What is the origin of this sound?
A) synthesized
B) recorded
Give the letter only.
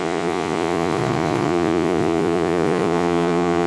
A